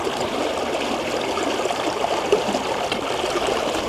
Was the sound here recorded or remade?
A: recorded